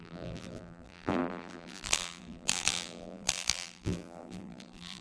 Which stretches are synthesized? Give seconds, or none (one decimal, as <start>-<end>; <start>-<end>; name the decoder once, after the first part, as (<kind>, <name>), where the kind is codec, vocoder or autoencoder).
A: 0.0-5.0 (vocoder, BigVGAN v2)